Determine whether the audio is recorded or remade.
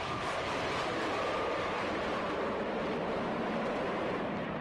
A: remade